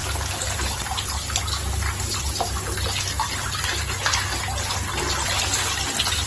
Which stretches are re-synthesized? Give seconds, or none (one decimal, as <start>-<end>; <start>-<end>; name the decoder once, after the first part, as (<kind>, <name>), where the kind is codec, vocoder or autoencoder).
none